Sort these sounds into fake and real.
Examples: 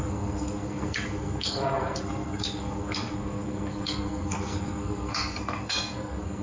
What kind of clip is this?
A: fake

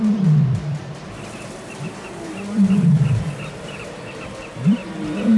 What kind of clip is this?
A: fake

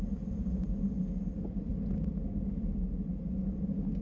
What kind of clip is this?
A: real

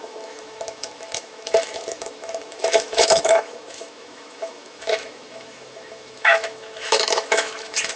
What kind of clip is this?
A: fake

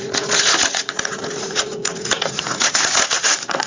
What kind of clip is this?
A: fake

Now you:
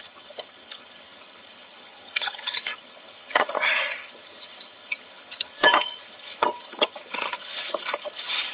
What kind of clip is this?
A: fake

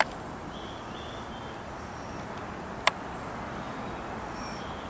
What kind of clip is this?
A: fake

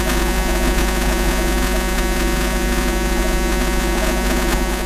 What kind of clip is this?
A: fake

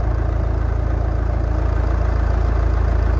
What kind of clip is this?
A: real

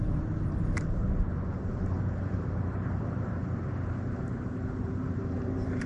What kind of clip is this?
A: fake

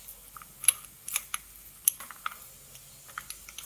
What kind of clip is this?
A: real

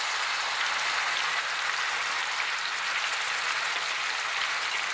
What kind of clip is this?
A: real